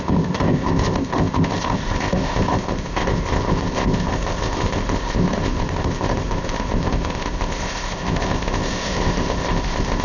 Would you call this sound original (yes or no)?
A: no